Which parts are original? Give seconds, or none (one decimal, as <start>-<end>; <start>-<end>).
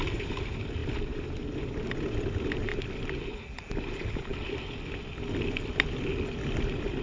0.0-7.0